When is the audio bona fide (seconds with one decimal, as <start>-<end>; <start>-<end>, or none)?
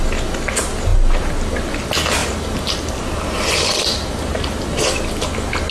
0.0-5.7